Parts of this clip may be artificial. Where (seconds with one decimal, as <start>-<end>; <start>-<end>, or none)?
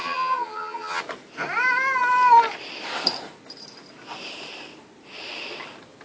0.0-1.0